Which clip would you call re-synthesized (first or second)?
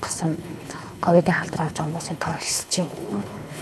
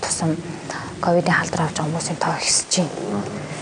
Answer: first